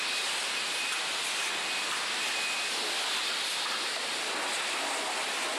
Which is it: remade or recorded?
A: recorded